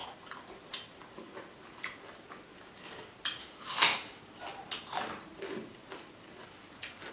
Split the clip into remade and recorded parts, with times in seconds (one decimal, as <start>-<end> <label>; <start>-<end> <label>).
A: 0.0-3.4 recorded; 3.4-4.2 remade; 4.2-7.1 recorded